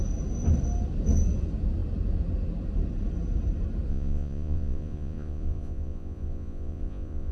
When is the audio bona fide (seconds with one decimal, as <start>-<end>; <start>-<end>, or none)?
0.0-3.9